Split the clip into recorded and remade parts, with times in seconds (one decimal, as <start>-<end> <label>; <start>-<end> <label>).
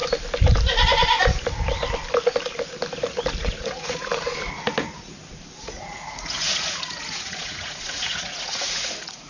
0.0-3.4 recorded; 3.4-4.1 remade; 4.1-5.6 recorded; 5.6-9.3 remade